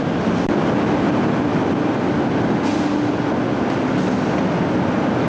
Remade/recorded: recorded